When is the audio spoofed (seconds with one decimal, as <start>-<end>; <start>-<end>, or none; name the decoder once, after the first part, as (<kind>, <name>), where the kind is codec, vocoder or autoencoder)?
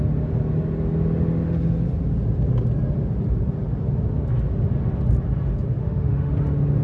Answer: 5.8-6.3 (autoencoder, DAC-VAE)